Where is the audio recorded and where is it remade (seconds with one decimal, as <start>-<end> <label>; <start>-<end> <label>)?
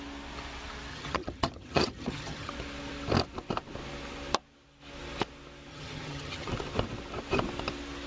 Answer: 0.0-0.9 recorded; 0.9-2.5 remade; 2.5-5.7 recorded; 5.7-6.5 remade; 6.5-8.1 recorded